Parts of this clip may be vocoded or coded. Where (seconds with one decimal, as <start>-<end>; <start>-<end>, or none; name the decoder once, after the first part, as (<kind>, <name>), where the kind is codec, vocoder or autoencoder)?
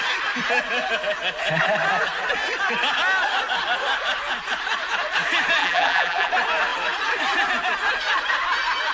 5.6-6.3 (vocoder, BigVGAN v2)